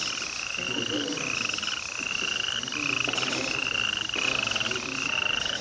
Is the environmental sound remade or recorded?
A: recorded